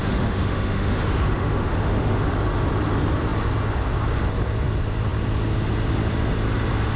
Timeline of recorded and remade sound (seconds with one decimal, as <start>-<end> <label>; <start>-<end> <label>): 0.0-2.3 remade; 2.3-7.0 recorded